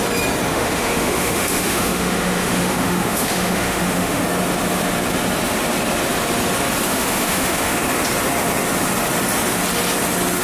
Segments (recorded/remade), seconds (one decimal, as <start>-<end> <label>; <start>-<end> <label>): 0.0-0.5 recorded; 0.5-4.2 remade; 4.2-6.9 recorded; 6.9-7.8 remade; 7.8-10.4 recorded